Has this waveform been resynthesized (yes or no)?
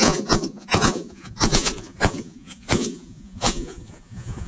yes